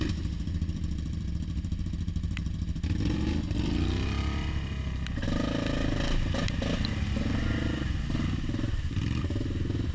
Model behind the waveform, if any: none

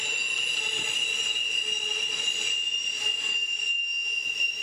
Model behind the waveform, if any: none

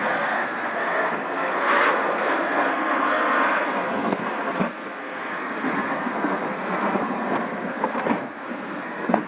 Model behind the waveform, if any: codec, SNAC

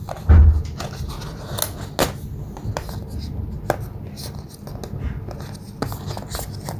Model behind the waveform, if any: none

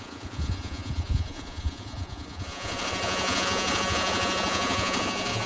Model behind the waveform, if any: vocoder, Vocos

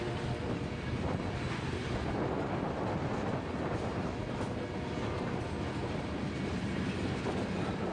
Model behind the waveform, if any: none